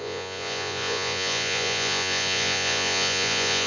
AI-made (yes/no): yes